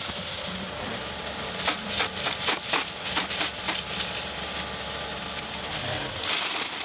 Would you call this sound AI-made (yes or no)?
no